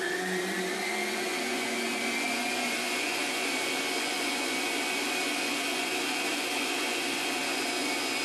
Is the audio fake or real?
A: fake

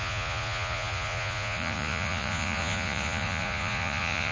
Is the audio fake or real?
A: fake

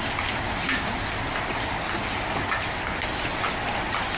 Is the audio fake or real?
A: real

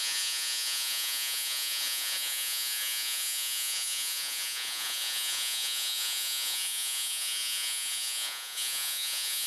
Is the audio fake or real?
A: fake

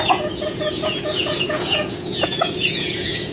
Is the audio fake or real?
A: fake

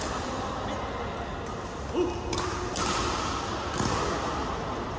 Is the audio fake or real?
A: real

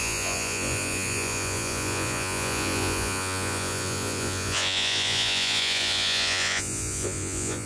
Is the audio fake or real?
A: fake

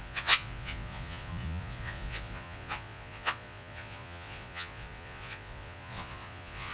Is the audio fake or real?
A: fake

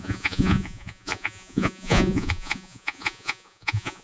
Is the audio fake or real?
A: fake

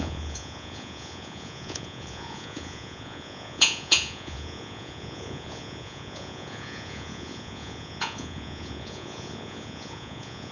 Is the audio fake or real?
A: fake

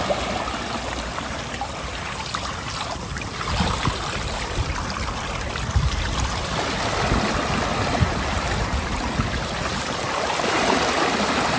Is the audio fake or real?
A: real